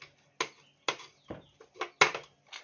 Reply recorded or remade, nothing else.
recorded